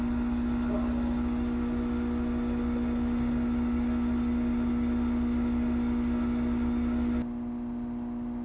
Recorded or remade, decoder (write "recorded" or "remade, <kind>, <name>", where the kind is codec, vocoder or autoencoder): recorded